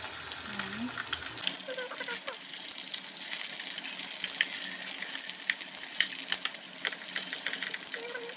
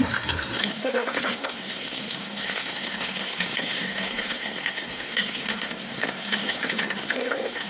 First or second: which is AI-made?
second